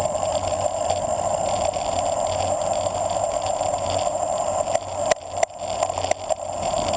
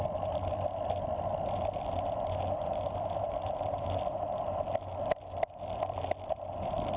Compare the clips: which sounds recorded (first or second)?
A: first